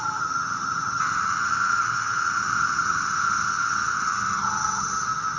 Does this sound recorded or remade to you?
remade